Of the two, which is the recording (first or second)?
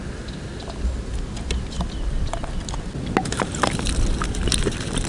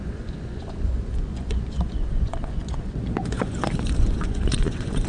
first